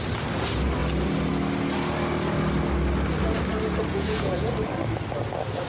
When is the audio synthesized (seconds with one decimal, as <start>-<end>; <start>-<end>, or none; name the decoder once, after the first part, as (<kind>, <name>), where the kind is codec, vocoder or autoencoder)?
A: 3.9-4.5 (vocoder, Vocos)